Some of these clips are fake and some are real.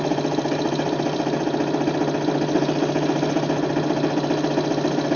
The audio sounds real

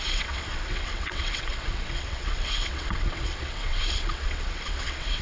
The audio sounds fake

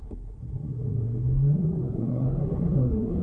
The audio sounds fake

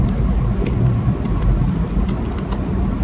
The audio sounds real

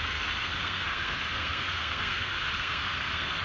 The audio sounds fake